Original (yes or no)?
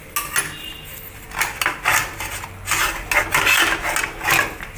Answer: yes